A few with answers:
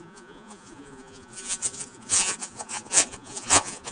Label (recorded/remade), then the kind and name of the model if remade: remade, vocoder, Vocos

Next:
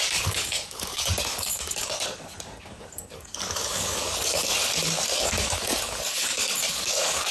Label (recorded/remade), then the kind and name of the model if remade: remade, codec, DAC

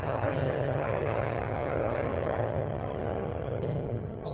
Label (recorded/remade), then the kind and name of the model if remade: remade, vocoder, HiFi-GAN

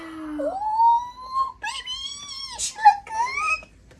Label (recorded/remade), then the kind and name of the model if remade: recorded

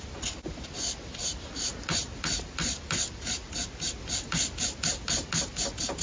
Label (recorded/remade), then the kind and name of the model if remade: recorded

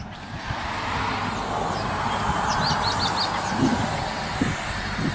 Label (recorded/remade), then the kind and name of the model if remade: recorded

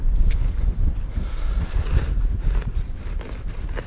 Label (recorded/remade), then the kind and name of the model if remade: recorded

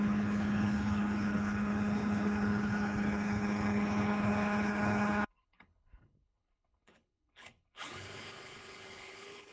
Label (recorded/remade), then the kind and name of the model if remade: remade, codec, HILCodec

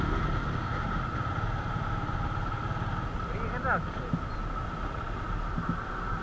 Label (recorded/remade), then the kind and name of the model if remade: recorded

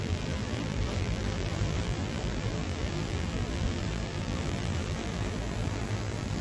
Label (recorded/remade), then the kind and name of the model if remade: remade, vocoder, BigVGAN v2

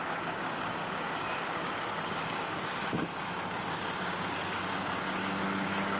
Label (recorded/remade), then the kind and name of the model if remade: remade, codec, DAC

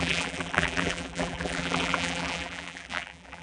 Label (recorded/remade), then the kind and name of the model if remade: remade, vocoder, BigVGAN v2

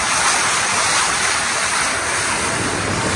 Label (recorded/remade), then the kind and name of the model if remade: remade, vocoder, BigVGAN v2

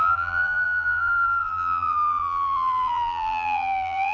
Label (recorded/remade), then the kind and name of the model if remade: remade, vocoder, BigVGAN v2